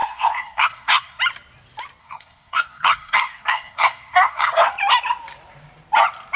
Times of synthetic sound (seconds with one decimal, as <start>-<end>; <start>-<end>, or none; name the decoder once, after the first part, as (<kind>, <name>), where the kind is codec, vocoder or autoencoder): 0.0-1.2 (codec, SNAC); 2.0-4.7